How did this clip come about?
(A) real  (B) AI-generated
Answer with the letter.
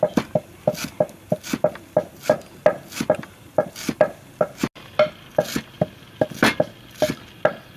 A